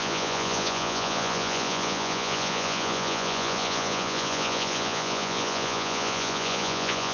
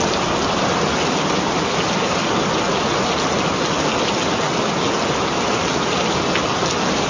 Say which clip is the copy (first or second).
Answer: first